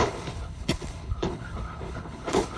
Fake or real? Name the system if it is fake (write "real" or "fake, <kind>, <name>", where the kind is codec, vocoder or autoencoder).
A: fake, codec, HILCodec